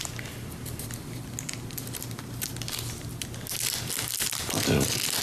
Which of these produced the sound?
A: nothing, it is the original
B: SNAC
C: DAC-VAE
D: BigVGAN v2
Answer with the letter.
A